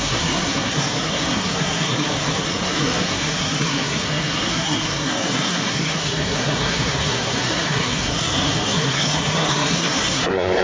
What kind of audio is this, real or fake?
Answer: fake